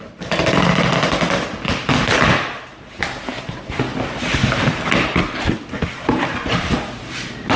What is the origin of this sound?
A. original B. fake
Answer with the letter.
A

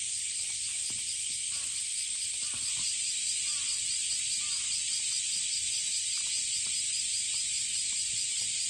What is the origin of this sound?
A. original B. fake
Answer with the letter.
B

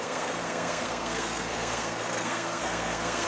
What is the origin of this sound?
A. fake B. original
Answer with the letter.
A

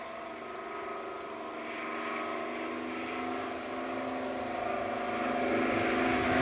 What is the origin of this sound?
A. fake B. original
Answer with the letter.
B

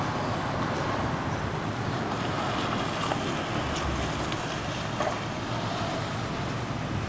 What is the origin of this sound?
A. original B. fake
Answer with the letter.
A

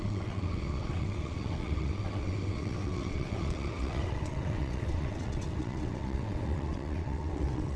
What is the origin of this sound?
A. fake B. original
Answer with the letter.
A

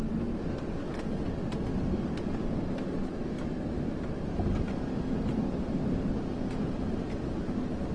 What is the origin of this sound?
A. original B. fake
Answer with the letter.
A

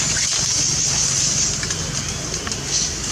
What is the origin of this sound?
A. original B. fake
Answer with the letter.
A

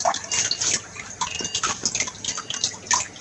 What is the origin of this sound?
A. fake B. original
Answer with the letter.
B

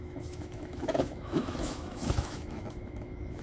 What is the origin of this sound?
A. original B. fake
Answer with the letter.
B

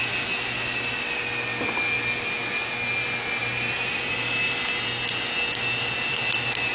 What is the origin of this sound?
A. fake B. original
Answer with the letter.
B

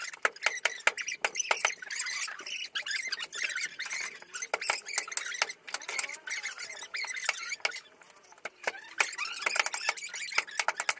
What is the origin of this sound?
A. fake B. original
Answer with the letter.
B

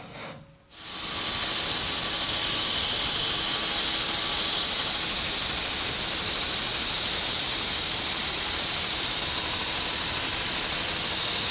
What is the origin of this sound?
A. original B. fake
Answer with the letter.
A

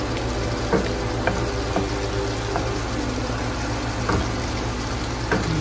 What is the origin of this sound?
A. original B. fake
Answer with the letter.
A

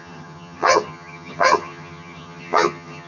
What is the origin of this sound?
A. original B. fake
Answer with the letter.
B